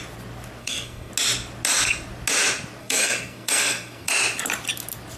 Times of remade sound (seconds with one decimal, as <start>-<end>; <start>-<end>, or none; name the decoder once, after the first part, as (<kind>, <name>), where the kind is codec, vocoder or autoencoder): 0.6-1.1 (codec, SNAC); 2.8-4.1